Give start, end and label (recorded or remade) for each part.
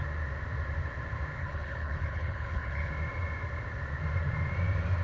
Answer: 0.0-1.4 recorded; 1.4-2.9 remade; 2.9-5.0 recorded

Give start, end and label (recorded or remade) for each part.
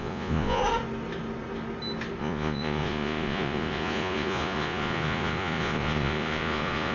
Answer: 0.0-0.6 remade; 0.6-2.2 recorded; 2.2-6.9 remade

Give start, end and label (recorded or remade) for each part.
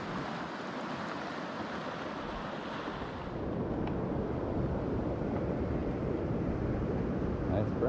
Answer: 0.0-7.9 recorded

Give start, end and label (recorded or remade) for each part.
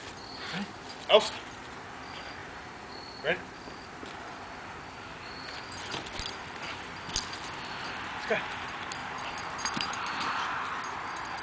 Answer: 0.0-9.0 recorded; 9.0-10.7 remade; 10.7-11.4 recorded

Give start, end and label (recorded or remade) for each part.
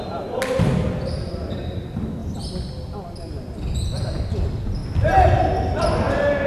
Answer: 0.0-6.5 recorded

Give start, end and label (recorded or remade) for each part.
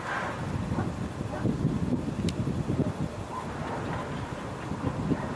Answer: 0.0-5.4 recorded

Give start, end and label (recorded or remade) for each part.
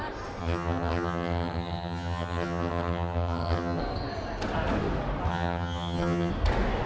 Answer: 0.0-0.4 recorded; 0.4-3.8 remade; 3.8-5.3 recorded; 5.3-6.3 remade; 6.3-6.9 recorded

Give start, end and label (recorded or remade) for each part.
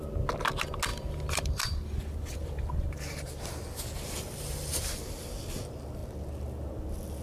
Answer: 0.0-0.9 recorded; 0.9-3.4 remade; 3.4-7.2 recorded